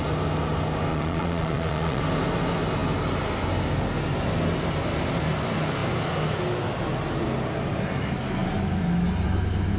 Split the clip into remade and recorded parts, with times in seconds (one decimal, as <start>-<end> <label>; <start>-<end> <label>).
0.0-0.9 recorded; 0.9-2.0 remade; 2.0-9.8 recorded